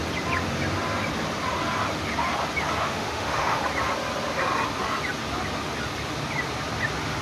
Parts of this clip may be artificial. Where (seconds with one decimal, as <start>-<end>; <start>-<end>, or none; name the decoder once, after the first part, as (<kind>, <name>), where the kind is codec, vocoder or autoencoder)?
2.8-3.6 (autoencoder, DAC-VAE)

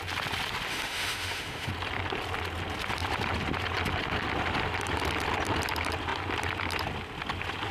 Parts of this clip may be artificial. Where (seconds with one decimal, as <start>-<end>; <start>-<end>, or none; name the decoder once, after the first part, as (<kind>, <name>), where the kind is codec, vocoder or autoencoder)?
0.7-1.7 (autoencoder, DAC-VAE)

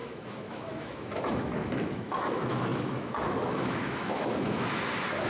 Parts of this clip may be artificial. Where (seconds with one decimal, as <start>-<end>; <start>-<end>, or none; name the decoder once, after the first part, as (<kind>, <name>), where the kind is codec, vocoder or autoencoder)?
0.0-5.3 (autoencoder, DAC-VAE)

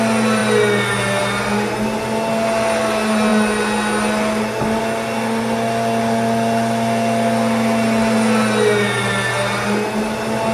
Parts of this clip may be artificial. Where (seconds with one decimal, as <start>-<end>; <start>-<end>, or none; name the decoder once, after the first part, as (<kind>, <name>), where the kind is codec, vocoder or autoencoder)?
none

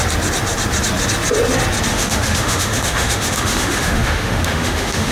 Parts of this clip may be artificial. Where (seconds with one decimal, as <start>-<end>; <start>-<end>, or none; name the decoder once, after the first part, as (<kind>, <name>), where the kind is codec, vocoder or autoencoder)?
1.9-5.1 (autoencoder, DAC-VAE)

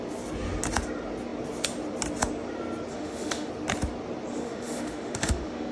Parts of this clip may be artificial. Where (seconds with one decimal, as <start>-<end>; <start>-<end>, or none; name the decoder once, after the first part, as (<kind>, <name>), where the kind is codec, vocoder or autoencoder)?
2.9-3.5 (autoencoder, DAC-VAE); 4.3-5.7

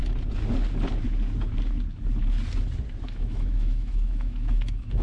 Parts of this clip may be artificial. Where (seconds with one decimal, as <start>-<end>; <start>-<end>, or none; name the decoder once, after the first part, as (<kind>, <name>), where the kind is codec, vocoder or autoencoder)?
3.0-5.0 (autoencoder, DAC-VAE)

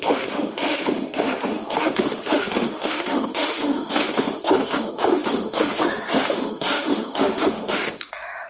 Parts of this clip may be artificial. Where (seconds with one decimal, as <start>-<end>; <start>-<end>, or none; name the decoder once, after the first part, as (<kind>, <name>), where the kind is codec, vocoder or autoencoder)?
0.0-8.5 (autoencoder, DAC-VAE)